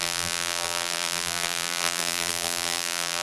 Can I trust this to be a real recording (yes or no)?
no